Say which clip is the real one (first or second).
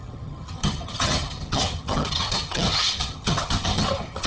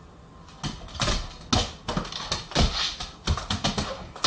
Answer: second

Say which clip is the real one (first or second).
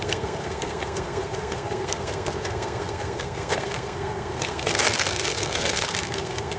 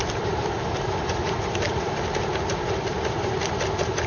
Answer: second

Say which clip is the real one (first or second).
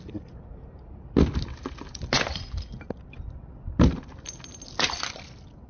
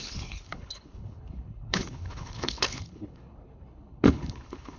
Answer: first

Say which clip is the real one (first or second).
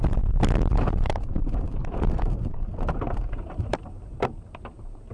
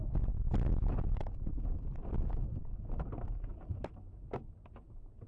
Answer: second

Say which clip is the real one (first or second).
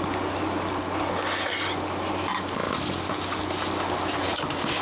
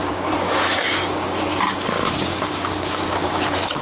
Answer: first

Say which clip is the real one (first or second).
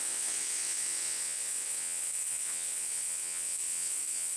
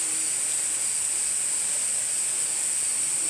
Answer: second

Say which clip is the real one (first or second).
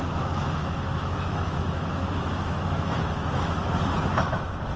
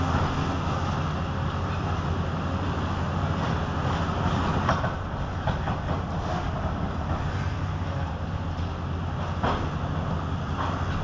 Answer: second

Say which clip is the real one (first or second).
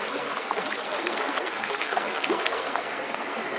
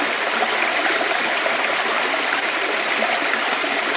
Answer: second